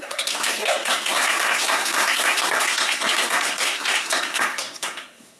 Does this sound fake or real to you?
fake